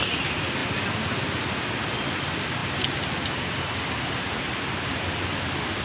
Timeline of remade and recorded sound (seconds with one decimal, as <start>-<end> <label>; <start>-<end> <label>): 0.0-5.8 recorded